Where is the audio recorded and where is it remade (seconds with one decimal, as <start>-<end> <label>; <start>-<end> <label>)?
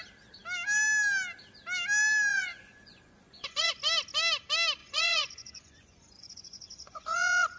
0.0-2.3 recorded; 2.3-3.7 remade; 3.7-4.8 recorded; 4.8-7.6 remade